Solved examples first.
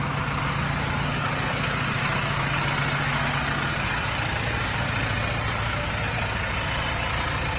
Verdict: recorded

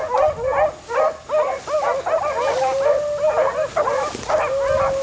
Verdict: recorded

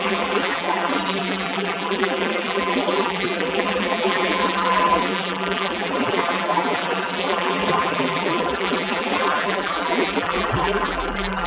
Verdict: remade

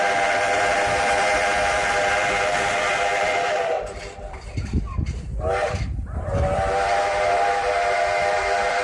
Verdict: remade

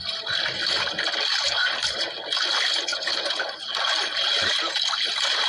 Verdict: recorded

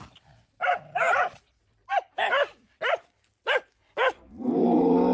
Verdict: remade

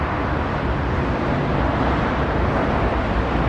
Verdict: recorded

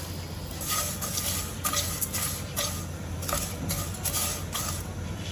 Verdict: recorded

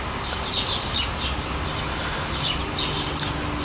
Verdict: recorded